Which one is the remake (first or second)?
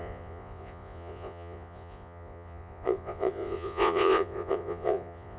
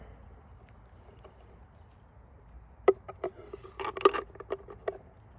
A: first